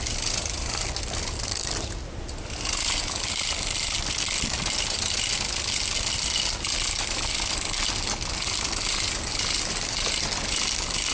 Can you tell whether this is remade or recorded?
recorded